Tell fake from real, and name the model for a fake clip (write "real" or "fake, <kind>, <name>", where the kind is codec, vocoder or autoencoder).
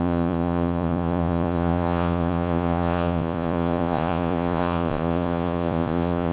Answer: fake, vocoder, Vocos